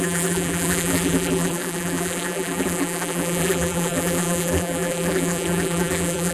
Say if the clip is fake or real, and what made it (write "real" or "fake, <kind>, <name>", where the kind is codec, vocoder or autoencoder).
fake, vocoder, BigVGAN v2